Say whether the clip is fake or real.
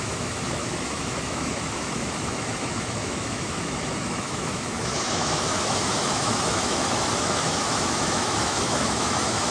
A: fake